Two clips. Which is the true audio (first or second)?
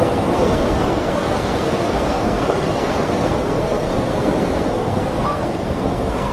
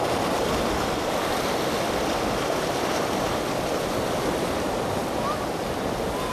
second